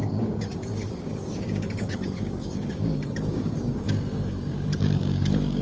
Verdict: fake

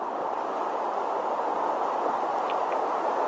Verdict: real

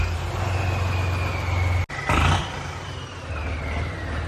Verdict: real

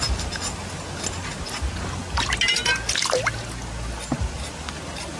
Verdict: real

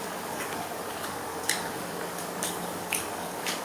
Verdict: fake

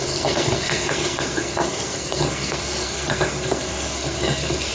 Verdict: fake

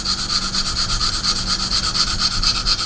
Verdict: real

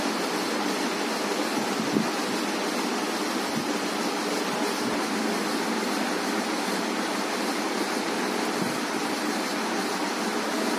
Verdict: real